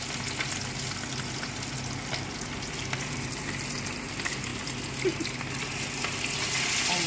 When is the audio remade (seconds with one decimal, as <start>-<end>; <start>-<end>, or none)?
none